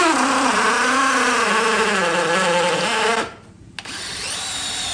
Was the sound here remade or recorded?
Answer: recorded